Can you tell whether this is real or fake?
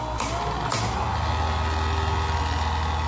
real